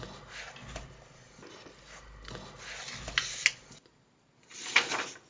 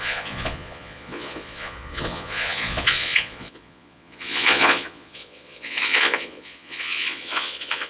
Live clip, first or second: first